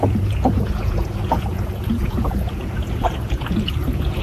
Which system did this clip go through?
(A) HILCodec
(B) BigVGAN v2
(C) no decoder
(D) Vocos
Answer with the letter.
D